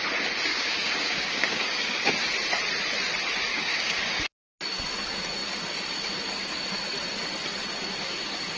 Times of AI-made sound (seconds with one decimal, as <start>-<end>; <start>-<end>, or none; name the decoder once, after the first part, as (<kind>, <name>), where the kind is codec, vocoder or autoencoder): 0.5-2.1 (codec, DAC); 3.5-4.2